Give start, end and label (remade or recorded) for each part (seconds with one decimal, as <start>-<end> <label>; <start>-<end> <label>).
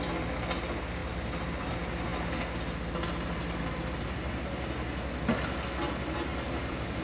0.0-1.0 recorded; 1.0-1.7 remade; 1.7-6.3 recorded; 6.3-7.0 remade